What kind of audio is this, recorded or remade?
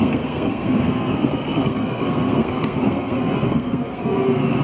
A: remade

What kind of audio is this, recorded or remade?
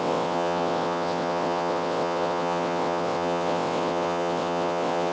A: remade